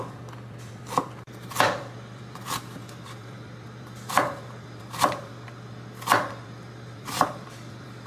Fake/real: fake